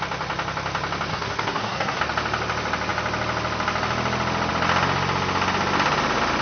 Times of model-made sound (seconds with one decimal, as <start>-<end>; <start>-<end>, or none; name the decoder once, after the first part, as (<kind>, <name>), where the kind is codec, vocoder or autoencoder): 1.1-2.0 (codec, SNAC)